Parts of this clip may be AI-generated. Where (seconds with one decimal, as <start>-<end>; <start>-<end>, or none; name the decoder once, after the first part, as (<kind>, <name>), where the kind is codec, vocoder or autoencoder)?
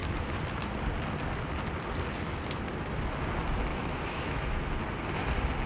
3.7-4.6 (autoencoder, DAC-VAE)